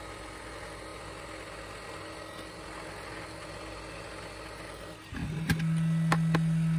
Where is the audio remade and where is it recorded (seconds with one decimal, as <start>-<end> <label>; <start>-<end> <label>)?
0.0-6.8 recorded